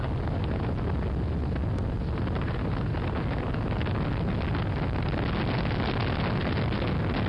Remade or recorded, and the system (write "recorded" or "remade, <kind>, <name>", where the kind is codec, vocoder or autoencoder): recorded